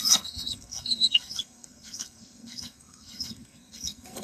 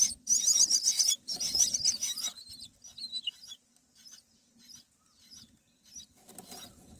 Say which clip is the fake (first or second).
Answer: first